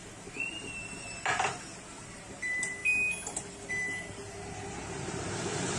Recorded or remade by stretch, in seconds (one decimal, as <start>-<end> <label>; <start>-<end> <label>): 0.0-2.0 recorded; 2.0-2.8 remade; 2.8-3.7 recorded; 3.7-4.2 remade; 4.2-4.7 recorded; 4.7-5.8 remade